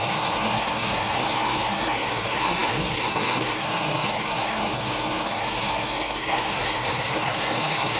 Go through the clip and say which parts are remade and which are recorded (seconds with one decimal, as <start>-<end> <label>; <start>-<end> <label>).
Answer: 0.0-8.0 remade